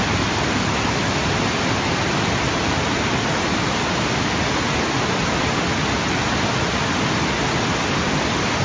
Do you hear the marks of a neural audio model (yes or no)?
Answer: no